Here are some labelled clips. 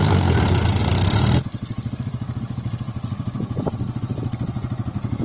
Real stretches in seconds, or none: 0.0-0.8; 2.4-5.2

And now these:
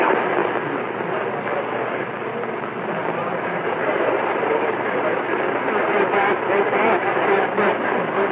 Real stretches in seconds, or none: 0.0-3.2; 4.6-5.8; 6.5-8.3

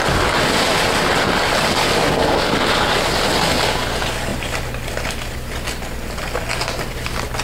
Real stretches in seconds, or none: 0.0-7.4

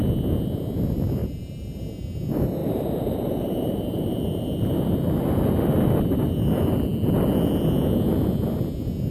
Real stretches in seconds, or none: 0.0-1.2; 1.8-2.6; 4.8-9.1

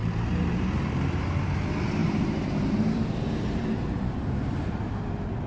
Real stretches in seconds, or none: 1.2-2.0

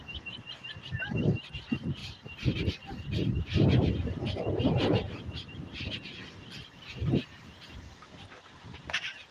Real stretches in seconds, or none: 6.2-7.2